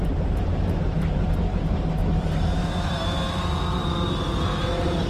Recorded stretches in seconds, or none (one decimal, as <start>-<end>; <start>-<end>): 2.0-5.1